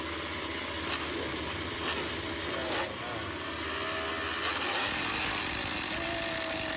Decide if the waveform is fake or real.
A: real